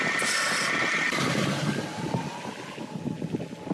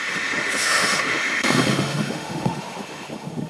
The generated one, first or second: second